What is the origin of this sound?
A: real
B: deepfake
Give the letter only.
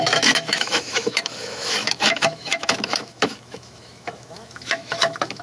B